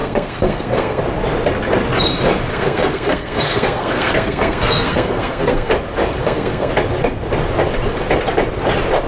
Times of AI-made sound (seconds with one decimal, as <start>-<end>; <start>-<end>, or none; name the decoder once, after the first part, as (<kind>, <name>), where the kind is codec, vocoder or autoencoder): 0.0-1.0 (codec, SNAC); 2.5-5.7; 6.2-6.7